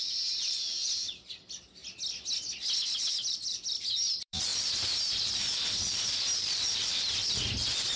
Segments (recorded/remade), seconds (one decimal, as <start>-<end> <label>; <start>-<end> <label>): 0.0-1.8 remade; 1.8-3.1 recorded; 3.1-8.0 remade